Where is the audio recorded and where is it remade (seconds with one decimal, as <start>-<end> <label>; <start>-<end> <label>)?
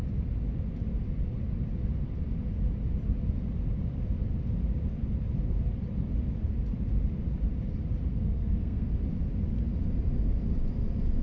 0.0-8.1 recorded; 8.1-8.9 remade; 8.9-11.2 recorded